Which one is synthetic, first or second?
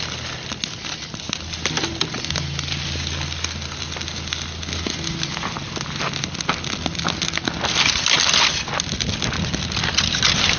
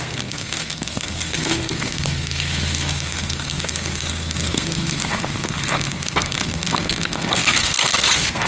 second